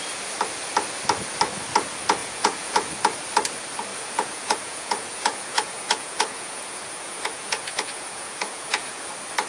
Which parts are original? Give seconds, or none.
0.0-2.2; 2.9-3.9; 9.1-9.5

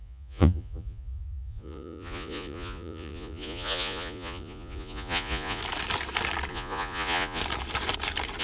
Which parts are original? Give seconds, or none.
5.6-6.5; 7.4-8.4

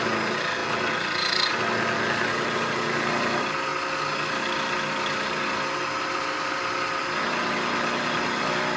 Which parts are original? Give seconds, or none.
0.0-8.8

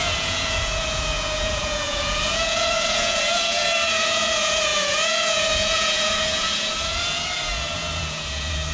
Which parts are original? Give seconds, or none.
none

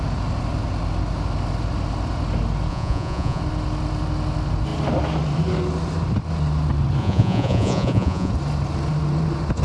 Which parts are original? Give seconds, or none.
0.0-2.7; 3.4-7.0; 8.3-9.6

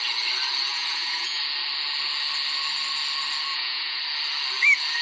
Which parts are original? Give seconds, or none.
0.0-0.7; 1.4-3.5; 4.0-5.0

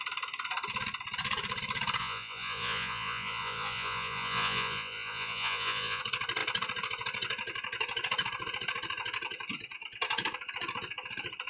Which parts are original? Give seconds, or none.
0.0-2.0; 6.0-11.5

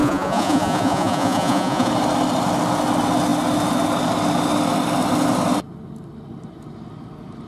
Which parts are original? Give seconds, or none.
1.9-7.5